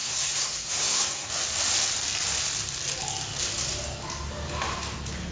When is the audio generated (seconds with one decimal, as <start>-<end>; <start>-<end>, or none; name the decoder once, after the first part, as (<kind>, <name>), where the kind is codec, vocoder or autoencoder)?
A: 0.0-1.3 (codec, SNAC)